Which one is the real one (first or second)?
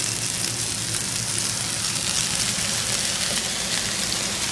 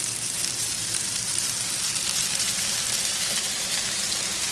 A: first